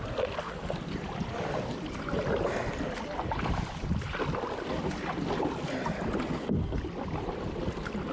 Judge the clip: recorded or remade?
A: recorded